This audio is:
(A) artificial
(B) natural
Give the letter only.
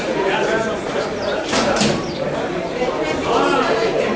A